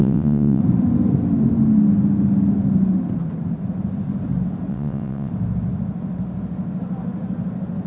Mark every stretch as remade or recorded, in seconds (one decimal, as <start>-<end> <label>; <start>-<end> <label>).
0.0-0.6 remade; 0.6-4.7 recorded; 4.7-5.3 remade; 5.3-7.9 recorded